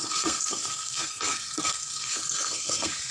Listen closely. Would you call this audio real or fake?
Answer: fake